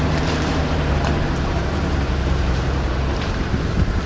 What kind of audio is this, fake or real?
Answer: fake